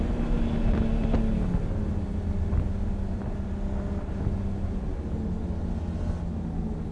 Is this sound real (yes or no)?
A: yes